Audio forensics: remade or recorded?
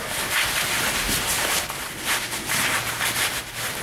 recorded